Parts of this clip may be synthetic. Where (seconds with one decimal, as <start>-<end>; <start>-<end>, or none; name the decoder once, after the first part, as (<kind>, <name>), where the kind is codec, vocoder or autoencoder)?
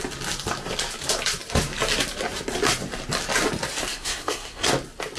3.9-4.7 (codec, SNAC)